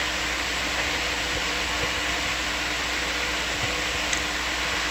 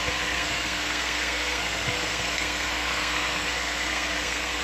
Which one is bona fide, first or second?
first